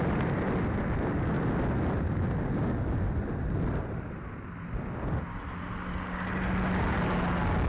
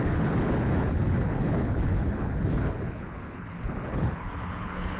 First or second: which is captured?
first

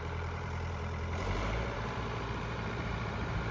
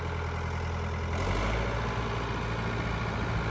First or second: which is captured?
second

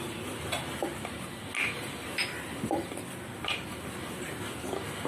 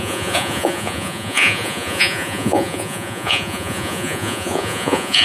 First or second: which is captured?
first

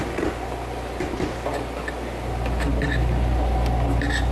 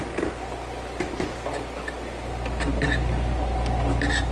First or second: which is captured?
first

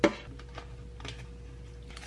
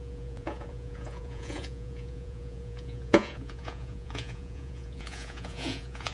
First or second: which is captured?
first